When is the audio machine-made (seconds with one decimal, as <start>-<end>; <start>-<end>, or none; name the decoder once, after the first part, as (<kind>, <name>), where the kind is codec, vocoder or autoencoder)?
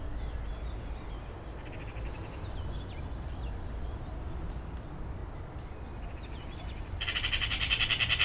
none